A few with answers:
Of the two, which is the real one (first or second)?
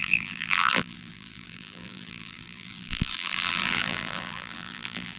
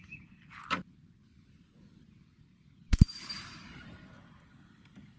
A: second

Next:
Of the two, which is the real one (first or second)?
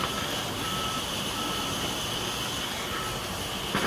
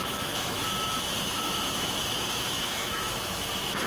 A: first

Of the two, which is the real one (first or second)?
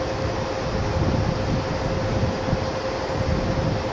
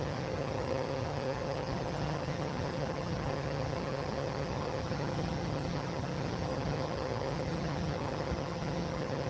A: first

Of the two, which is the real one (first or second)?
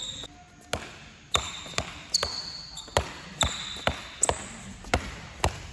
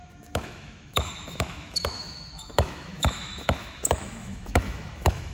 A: first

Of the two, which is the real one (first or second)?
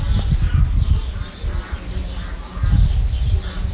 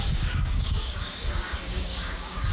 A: first